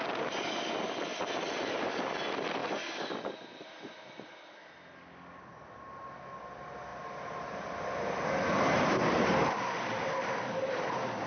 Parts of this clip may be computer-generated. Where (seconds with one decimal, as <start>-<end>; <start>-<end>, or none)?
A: 6.9-10.8